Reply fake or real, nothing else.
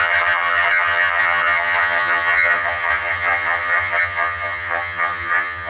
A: fake